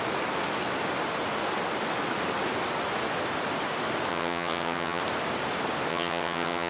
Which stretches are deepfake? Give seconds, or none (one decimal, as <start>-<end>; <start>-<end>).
4.1-5.0; 5.9-6.7